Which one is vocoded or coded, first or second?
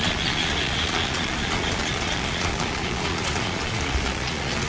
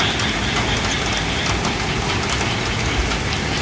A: first